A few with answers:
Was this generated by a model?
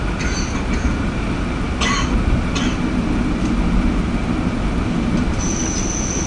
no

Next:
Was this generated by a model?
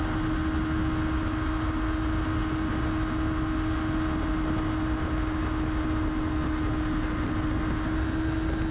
no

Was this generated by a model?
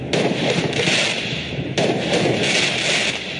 no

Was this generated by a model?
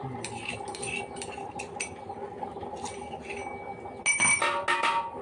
no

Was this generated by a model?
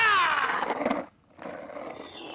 no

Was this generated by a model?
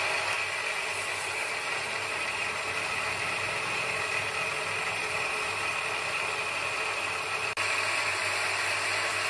no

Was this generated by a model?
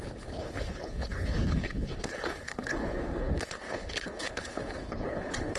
yes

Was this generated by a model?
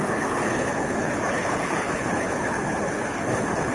yes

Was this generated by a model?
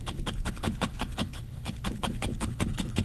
yes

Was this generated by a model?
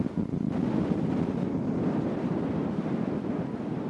no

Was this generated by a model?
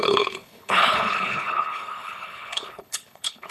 yes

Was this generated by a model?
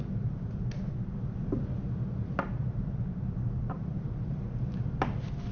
no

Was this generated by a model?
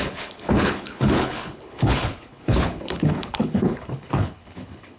yes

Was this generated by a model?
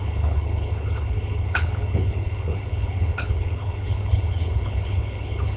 yes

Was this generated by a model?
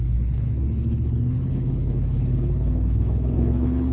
yes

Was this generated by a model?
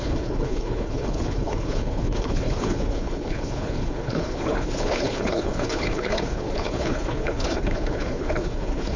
yes